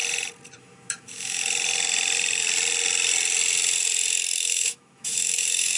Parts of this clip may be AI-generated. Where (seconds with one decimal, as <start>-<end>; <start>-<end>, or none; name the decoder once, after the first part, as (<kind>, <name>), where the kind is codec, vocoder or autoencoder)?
0.6-1.4 (autoencoder, DAC-VAE); 4.4-5.8